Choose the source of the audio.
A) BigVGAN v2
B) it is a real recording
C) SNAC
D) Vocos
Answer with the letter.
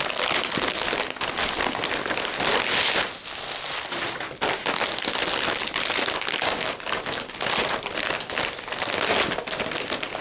B